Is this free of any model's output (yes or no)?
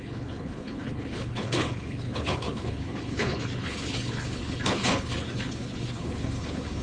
no